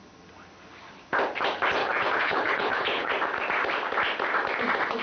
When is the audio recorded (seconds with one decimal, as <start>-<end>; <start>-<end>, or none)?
0.0-1.8; 3.1-5.0